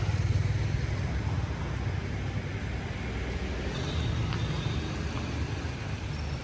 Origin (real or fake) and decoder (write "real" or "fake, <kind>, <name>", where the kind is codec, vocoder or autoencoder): real